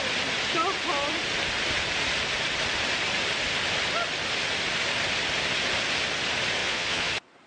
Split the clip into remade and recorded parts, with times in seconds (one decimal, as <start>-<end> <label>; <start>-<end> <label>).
0.0-6.6 recorded; 6.6-7.1 remade; 7.1-7.5 recorded